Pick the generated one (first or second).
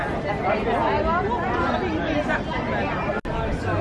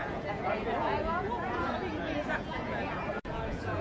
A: second